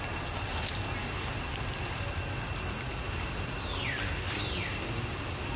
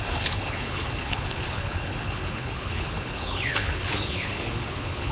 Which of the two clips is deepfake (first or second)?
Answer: second